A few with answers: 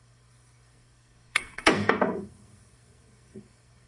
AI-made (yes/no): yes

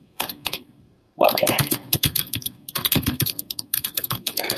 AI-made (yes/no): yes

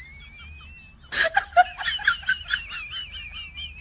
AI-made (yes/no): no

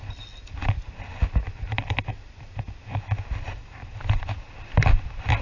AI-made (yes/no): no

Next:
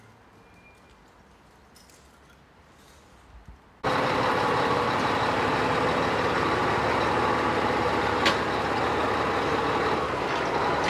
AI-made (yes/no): no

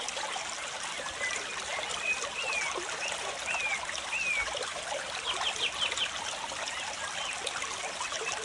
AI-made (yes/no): no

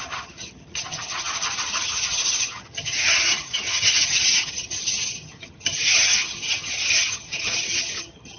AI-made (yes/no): yes